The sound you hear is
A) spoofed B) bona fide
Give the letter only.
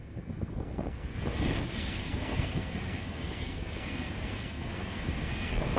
A